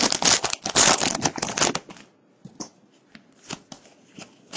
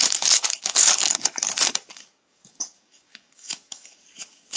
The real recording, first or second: first